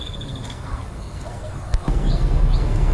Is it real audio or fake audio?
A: fake